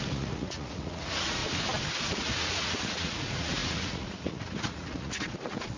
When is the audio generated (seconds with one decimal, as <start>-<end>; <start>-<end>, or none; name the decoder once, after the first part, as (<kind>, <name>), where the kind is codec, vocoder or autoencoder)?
0.0-1.4 (vocoder, Vocos); 1.9-5.8